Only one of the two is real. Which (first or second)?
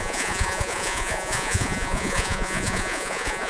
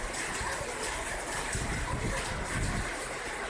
second